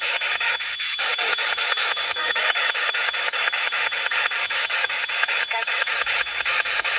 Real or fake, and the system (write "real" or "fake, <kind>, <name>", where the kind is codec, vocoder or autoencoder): fake, autoencoder, DAC-VAE